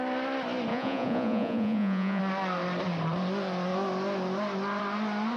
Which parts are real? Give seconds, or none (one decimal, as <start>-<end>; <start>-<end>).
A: 0.0-0.7; 2.2-5.4